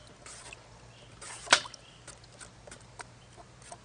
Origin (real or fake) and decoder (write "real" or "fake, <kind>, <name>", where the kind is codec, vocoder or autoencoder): real